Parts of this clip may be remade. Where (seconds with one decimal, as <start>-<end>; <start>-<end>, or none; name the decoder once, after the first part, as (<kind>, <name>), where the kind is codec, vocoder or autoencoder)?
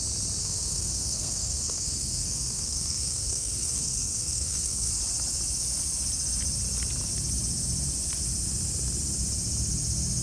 0.4-4.9 (codec, SNAC)